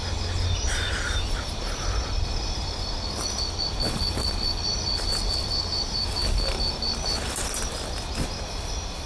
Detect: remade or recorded recorded